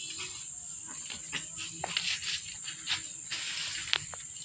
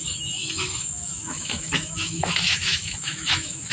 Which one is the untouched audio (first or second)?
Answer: first